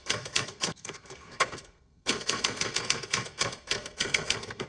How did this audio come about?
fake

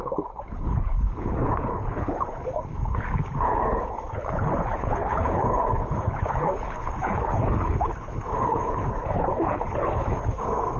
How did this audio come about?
fake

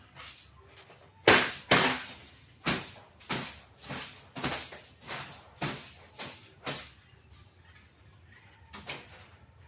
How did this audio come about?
real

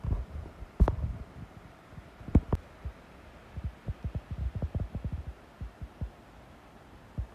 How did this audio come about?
real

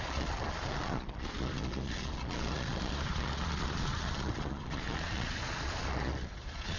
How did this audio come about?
fake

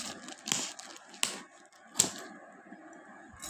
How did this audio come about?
real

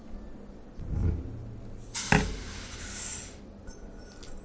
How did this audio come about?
real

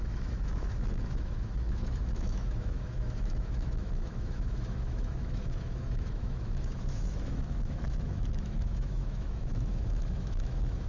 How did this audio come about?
fake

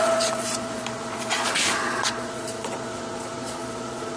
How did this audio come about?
fake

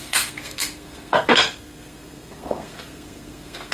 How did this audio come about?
fake